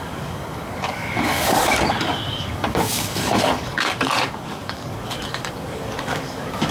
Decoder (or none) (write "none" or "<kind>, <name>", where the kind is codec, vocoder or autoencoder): codec, DAC